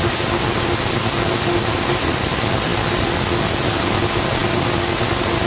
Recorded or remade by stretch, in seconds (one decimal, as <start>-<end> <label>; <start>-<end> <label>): 0.0-5.5 recorded